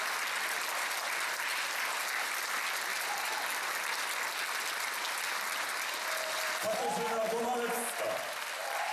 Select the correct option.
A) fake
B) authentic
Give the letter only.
B